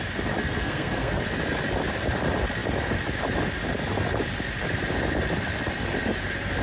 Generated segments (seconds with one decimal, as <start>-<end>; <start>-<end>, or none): 0.4-1.2